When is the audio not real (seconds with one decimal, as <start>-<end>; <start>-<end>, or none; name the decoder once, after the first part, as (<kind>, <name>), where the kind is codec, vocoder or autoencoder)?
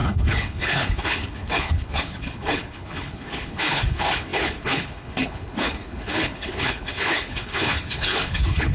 0.0-8.7 (codec, HILCodec)